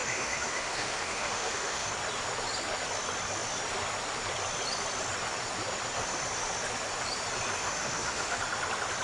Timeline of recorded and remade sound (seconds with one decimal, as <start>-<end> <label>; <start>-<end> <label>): 0.0-1.9 remade; 1.9-7.6 recorded; 7.6-8.4 remade; 8.4-9.0 recorded